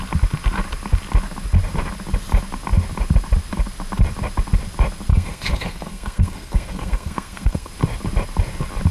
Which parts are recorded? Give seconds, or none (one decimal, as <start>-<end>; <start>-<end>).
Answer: 0.0-5.1; 7.7-8.9